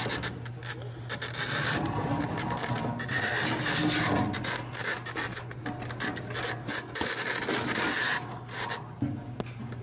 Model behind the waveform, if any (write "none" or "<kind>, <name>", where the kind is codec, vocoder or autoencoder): none